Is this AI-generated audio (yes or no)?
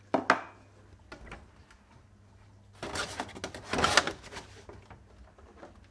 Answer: no